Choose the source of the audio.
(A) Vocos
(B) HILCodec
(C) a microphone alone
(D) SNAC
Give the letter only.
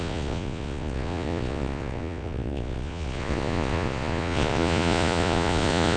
A